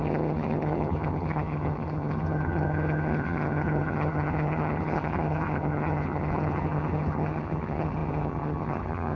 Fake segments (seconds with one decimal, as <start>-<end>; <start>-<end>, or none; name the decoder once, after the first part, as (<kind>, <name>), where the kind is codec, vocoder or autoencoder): 0.0-9.2 (vocoder, HiFi-GAN)